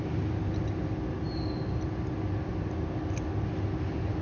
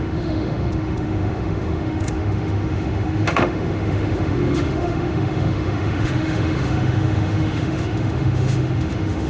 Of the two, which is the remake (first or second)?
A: second